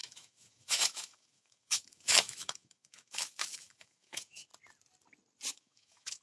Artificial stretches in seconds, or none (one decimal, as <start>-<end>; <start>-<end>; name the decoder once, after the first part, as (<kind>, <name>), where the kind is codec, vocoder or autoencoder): 0.0-4.5 (autoencoder, DAC-VAE); 5.5-6.2